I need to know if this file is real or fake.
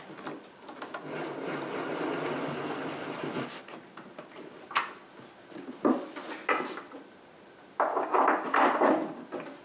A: real